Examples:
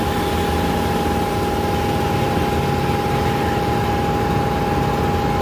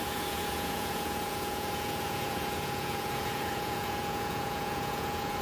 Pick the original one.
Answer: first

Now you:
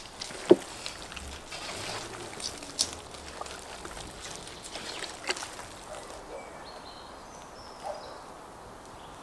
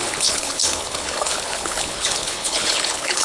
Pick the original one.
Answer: first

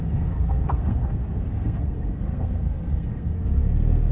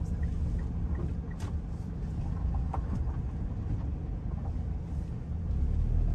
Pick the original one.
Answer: second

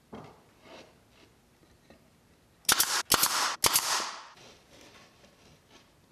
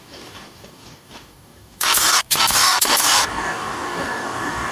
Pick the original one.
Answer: first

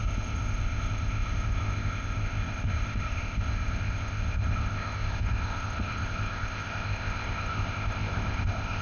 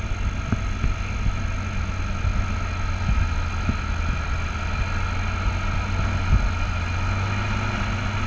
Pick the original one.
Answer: second